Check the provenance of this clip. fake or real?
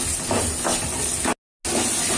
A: real